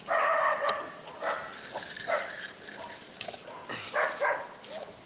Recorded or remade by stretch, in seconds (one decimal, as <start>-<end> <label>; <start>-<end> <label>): 0.0-3.6 recorded; 3.6-4.2 remade; 4.2-5.1 recorded

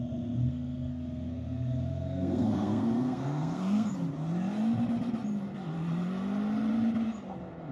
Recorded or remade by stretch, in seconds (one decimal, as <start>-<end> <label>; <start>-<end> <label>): 0.0-0.4 recorded; 0.4-3.9 remade; 3.9-7.7 recorded

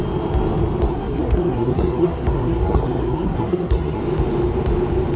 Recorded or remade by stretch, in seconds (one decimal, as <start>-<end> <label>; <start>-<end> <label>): 0.0-0.9 recorded; 0.9-4.0 remade; 4.0-5.2 recorded

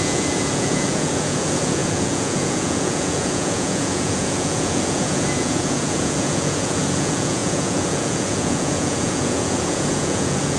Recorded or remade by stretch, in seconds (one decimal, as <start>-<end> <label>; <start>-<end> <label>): 0.0-10.6 remade

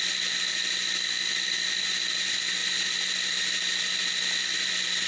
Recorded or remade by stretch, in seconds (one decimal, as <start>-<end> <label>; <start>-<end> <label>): 0.0-5.1 recorded

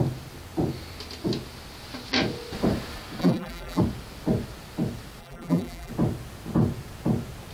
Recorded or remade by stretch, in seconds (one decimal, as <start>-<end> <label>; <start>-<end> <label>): 0.0-3.2 recorded; 3.2-3.8 remade; 3.8-5.2 recorded; 5.2-5.9 remade; 5.9-7.5 recorded